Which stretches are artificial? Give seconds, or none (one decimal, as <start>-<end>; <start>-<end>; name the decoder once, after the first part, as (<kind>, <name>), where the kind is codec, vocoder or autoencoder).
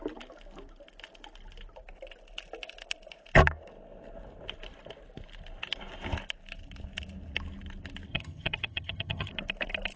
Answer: 8.1-9.3 (vocoder, HiFi-GAN)